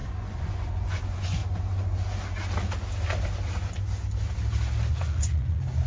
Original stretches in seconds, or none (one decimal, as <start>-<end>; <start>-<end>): 1.4-4.9